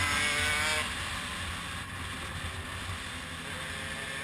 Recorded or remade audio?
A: recorded